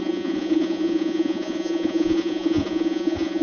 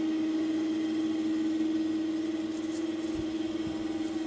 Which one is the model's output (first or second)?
first